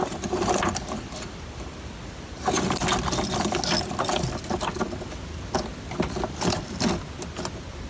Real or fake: real